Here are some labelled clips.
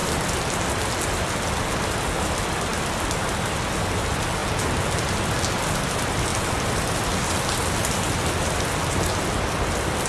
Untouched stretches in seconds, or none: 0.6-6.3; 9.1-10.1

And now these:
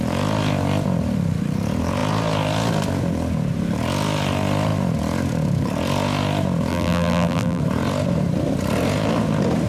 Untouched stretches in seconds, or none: 0.0-6.7; 7.6-9.7

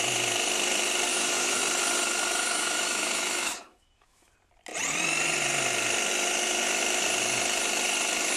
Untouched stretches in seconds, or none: 0.0-1.1; 1.6-2.4; 4.3-8.4

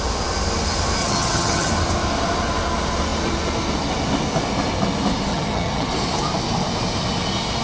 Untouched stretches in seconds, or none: 0.0-1.0; 1.7-5.3; 5.9-7.6